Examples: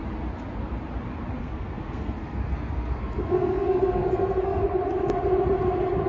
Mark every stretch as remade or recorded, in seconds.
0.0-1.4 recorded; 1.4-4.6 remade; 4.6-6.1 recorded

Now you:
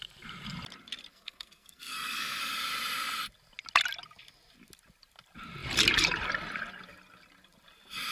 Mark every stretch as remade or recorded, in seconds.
0.0-1.1 recorded; 1.1-2.4 remade; 2.4-8.1 recorded

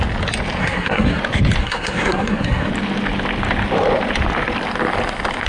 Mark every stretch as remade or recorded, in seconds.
0.0-0.6 recorded; 0.6-1.2 remade; 1.2-1.6 recorded; 1.6-2.7 remade; 2.7-5.5 recorded

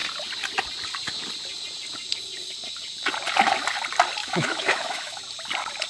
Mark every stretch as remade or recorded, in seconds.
0.0-4.2 recorded; 4.2-5.2 remade; 5.2-5.9 recorded

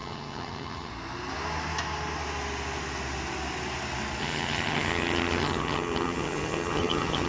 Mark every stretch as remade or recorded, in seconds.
0.0-0.9 remade; 0.9-4.2 recorded; 4.2-7.3 remade